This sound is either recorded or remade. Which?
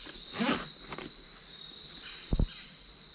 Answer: recorded